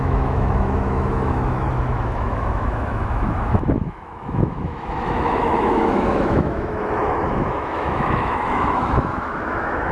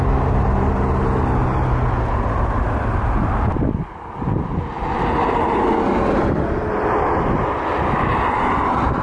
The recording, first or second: second